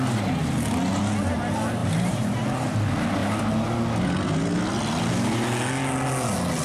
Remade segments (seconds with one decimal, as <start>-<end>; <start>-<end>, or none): 1.8-2.5